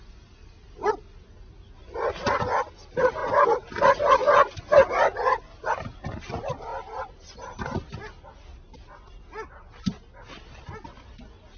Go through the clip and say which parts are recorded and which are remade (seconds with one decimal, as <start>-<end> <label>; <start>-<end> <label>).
0.0-11.6 recorded